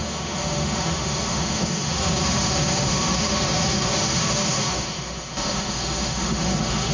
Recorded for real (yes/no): no